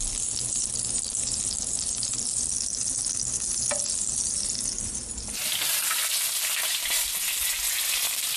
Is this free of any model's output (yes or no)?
yes